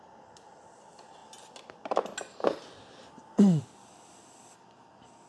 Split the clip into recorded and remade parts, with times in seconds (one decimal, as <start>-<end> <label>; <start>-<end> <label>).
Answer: 0.0-5.3 recorded